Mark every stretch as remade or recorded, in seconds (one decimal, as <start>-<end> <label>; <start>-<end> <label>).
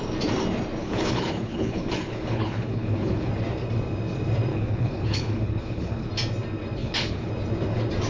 0.0-0.8 recorded; 0.8-3.3 remade; 3.3-4.5 recorded; 4.5-6.1 remade; 6.1-6.8 recorded; 6.8-7.3 remade; 7.3-8.1 recorded